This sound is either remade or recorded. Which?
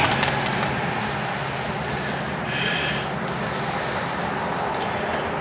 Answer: recorded